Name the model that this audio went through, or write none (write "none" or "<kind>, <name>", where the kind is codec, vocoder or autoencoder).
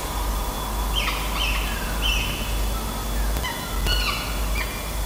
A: none